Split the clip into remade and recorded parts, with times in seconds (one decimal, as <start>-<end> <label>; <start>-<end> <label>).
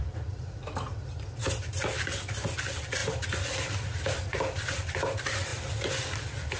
0.0-0.9 remade; 0.9-1.5 recorded; 1.5-6.6 remade